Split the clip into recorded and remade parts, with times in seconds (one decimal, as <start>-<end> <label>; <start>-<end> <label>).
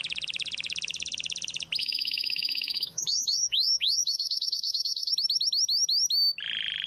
0.0-1.8 recorded; 1.8-5.1 remade; 5.1-6.9 recorded